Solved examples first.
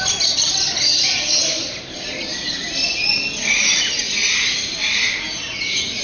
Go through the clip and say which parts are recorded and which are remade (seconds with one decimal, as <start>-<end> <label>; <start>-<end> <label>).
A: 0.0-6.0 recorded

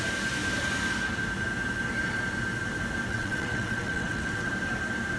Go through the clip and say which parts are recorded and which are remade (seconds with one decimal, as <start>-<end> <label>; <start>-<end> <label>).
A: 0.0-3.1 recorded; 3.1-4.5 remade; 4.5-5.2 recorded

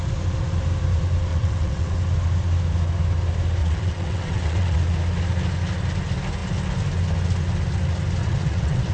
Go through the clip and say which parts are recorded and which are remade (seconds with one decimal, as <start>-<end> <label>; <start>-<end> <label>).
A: 0.0-1.3 recorded; 1.3-1.9 remade; 1.9-3.6 recorded; 3.6-4.8 remade; 4.8-8.2 recorded; 8.2-8.9 remade